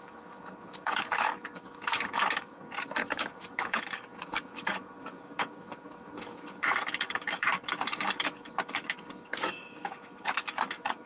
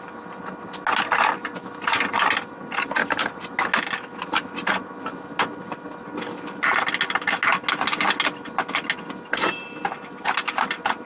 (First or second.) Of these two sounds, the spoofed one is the first